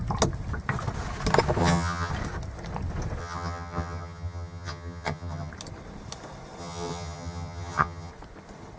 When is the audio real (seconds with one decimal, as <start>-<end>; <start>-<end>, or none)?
0.0-1.6; 2.1-3.2; 5.5-6.6; 8.1-8.8